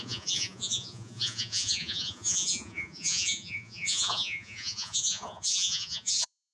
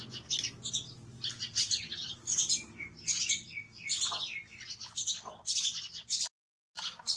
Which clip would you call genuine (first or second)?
second